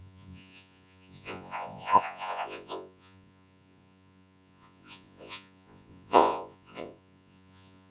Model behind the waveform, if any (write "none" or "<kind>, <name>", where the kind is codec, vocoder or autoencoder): vocoder, Vocos